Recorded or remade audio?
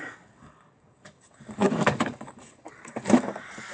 remade